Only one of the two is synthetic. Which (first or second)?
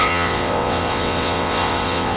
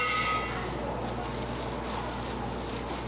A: first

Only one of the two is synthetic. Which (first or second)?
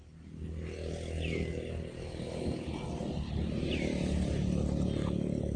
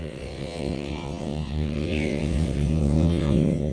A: second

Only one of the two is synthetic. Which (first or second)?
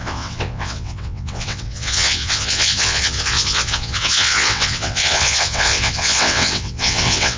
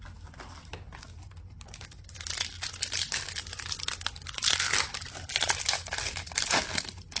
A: first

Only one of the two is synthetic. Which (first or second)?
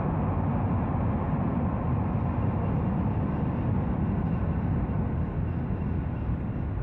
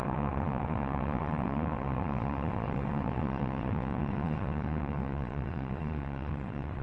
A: second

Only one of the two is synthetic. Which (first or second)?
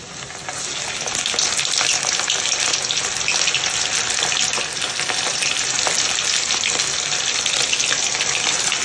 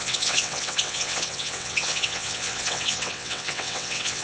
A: second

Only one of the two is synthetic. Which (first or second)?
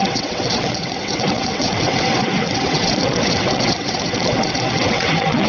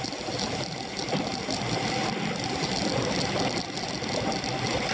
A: first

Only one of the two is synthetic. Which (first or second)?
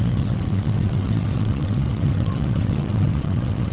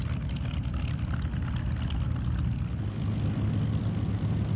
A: first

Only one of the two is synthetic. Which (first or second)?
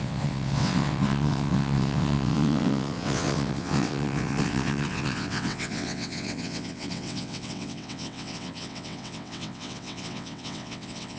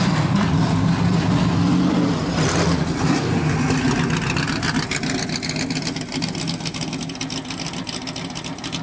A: first